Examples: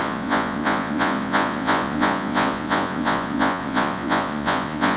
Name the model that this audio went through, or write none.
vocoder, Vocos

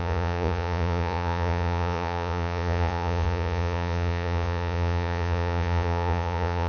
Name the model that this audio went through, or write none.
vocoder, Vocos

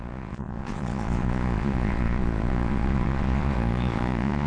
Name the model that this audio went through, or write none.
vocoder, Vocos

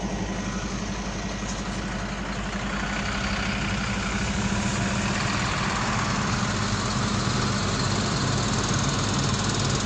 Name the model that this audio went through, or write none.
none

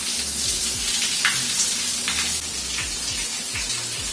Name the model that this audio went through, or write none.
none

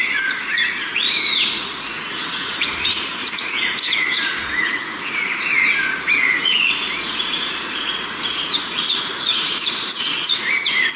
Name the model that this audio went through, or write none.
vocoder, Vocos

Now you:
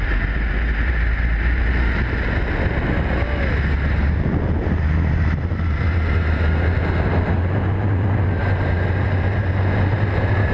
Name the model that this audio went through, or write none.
none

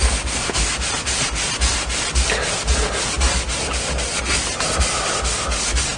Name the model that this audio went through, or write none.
none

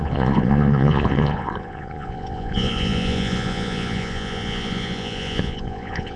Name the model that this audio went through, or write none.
vocoder, Vocos